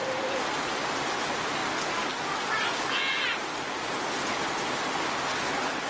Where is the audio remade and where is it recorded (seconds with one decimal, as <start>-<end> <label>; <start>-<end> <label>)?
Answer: 0.0-5.9 recorded